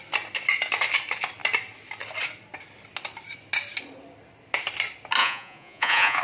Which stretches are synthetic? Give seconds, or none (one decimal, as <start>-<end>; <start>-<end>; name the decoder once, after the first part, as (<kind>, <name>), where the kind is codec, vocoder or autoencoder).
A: 5.2-6.2 (vocoder, Vocos)